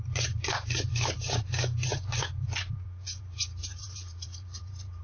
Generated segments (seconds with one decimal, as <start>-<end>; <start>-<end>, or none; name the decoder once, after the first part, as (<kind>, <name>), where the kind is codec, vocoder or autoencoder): 0.0-5.0 (vocoder, BigVGAN v2)